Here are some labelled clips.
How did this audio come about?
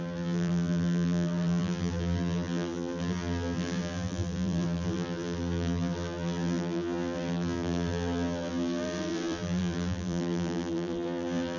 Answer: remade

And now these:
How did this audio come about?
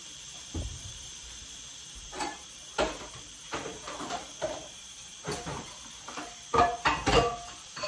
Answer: remade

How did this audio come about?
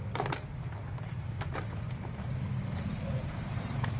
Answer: remade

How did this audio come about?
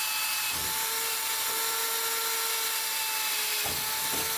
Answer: recorded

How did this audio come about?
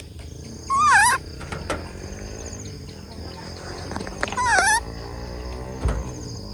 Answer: recorded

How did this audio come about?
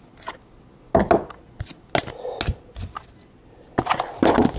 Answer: recorded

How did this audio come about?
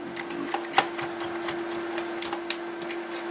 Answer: recorded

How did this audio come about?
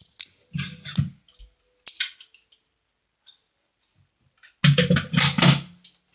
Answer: recorded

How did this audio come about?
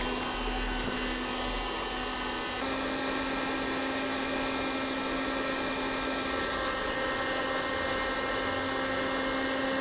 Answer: recorded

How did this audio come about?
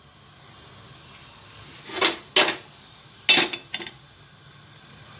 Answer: recorded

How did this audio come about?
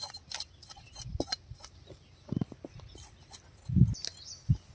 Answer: recorded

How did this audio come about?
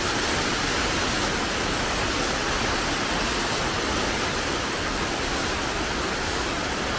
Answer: recorded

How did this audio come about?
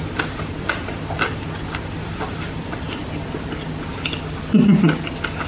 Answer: recorded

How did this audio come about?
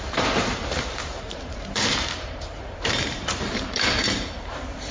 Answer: remade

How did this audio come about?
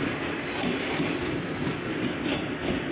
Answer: recorded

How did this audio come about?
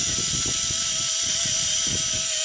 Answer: recorded